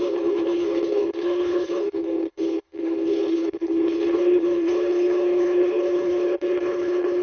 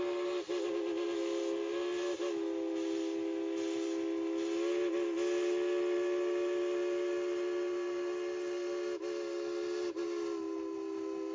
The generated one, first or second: first